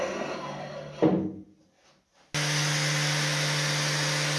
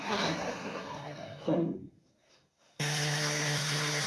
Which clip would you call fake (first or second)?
second